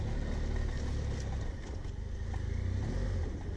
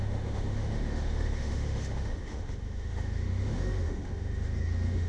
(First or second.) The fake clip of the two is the second